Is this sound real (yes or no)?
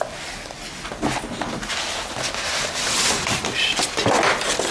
yes